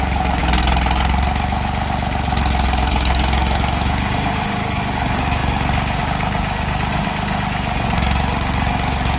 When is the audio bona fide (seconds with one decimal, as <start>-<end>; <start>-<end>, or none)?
0.4-2.9

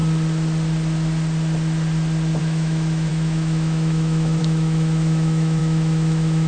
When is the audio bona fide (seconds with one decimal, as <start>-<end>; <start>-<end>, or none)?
0.0-2.4

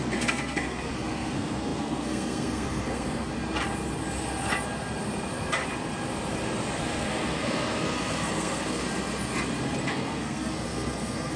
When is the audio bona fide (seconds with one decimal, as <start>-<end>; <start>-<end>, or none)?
3.3-6.8; 8.8-9.9

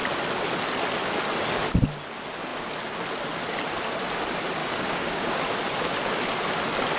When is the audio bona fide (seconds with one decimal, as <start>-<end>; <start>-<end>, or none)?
0.0-4.6; 5.4-7.0

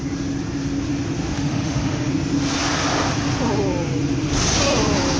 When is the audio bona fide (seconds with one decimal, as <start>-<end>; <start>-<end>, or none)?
0.0-1.3; 2.1-5.2

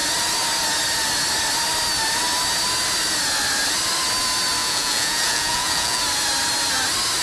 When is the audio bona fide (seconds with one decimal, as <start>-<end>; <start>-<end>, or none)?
0.0-4.6; 6.0-7.2

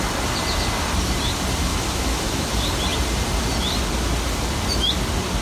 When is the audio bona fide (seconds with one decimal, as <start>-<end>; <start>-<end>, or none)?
0.0-1.7; 2.5-5.4